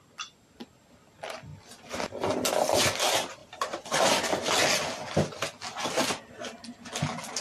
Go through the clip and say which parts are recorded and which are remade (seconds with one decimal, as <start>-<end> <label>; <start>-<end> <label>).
0.0-3.4 recorded; 3.4-4.1 remade; 4.1-7.4 recorded

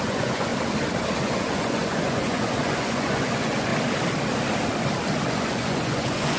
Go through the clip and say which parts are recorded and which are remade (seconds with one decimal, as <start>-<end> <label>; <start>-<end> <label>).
0.0-0.5 remade; 0.5-1.2 recorded; 1.2-3.7 remade; 3.7-5.3 recorded; 5.3-6.4 remade

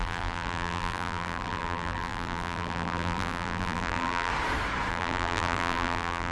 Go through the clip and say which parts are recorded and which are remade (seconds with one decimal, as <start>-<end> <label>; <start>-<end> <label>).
0.0-4.3 remade; 4.3-4.9 recorded; 4.9-6.3 remade

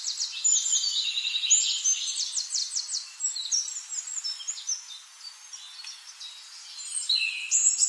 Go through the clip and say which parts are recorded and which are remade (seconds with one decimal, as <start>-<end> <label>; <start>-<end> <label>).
0.0-7.9 recorded

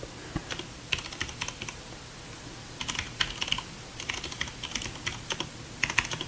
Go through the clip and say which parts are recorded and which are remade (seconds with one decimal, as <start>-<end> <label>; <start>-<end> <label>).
0.0-0.4 recorded; 0.4-4.2 remade; 4.2-6.3 recorded

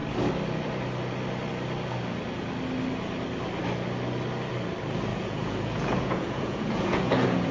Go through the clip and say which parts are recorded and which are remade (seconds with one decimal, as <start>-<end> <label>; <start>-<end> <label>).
0.0-5.1 recorded; 5.1-7.5 remade

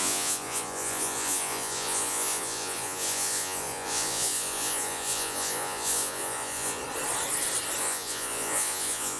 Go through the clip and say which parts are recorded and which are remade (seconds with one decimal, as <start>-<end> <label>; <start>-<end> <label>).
0.0-6.8 remade; 6.8-7.8 recorded; 7.8-9.2 remade